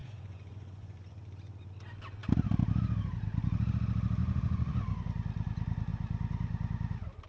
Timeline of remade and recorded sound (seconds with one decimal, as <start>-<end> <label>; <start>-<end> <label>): 0.0-1.1 remade; 1.1-4.2 recorded; 4.2-4.8 remade; 4.8-7.3 recorded